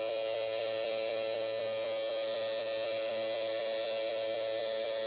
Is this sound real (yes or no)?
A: yes